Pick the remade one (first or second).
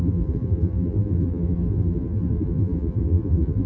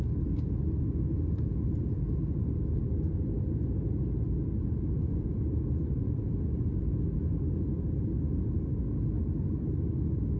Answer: first